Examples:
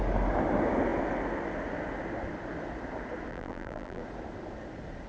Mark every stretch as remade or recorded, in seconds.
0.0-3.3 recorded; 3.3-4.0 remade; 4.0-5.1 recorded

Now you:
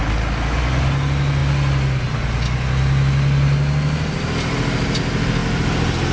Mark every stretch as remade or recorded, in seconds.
0.0-6.1 recorded